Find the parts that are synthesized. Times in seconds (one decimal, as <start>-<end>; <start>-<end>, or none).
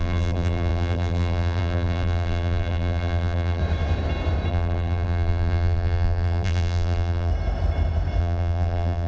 0.0-3.6; 4.5-7.3; 8.2-9.1